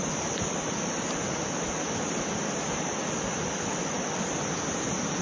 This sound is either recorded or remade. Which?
recorded